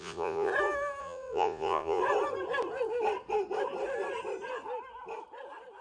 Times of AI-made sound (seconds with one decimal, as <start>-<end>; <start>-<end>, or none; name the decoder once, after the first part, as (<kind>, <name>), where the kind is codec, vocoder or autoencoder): 0.0-0.5 (vocoder, Vocos); 1.0-2.0